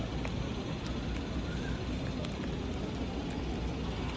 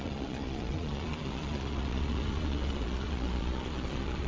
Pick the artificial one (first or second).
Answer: second